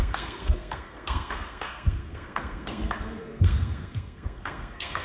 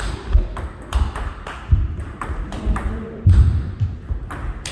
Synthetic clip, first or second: first